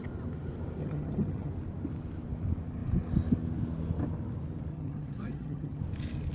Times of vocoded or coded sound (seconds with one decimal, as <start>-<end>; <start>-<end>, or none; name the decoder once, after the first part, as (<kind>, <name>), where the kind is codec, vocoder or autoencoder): 0.8-1.5 (vocoder, HiFi-GAN); 4.7-5.8